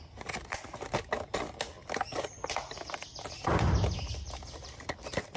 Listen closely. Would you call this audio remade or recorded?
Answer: recorded